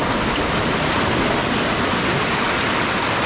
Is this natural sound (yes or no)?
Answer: yes